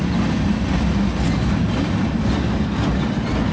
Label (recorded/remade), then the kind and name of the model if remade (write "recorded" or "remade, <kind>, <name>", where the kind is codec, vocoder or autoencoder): recorded